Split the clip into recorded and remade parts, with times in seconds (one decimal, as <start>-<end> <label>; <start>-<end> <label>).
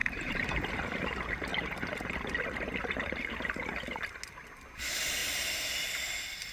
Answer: 0.0-0.7 remade; 0.7-5.2 recorded; 5.2-5.7 remade; 5.7-6.5 recorded